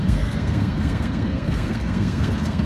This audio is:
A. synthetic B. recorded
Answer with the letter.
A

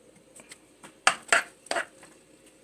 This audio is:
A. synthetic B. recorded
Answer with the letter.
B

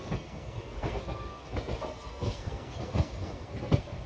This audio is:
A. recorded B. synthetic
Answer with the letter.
B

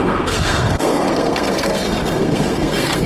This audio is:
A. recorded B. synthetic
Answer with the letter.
B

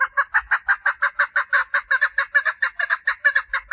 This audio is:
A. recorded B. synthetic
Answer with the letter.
A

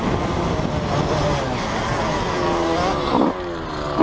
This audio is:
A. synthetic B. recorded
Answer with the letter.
B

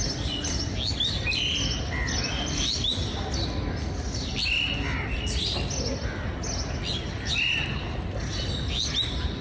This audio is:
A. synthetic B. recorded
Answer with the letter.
B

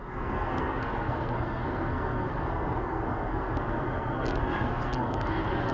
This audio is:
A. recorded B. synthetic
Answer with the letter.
B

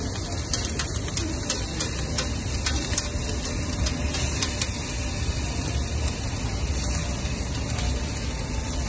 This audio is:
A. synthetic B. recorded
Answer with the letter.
B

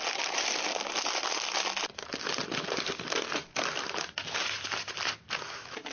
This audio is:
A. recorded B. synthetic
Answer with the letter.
A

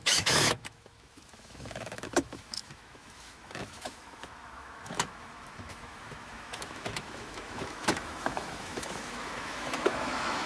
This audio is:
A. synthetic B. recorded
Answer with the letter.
A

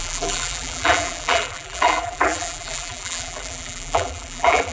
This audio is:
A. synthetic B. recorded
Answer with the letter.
A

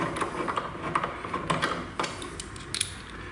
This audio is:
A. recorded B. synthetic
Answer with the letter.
A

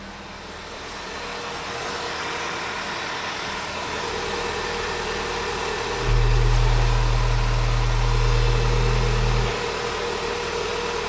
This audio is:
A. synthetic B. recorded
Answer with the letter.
B